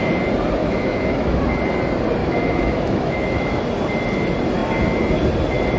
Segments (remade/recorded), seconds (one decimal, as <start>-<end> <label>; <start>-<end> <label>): 0.0-0.6 recorded; 0.6-1.4 remade; 1.4-2.2 recorded; 2.2-3.6 remade; 3.6-5.8 recorded